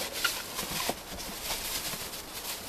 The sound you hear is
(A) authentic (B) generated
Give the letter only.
A